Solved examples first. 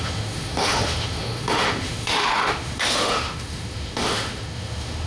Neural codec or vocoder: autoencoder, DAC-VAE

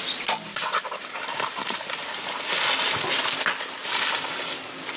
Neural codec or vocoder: none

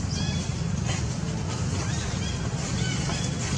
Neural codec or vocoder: none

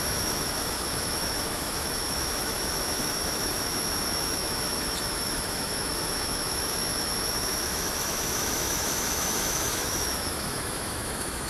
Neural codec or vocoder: autoencoder, DAC-VAE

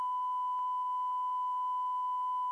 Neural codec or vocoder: none